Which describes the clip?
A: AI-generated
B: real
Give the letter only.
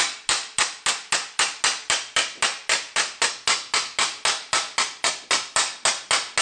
B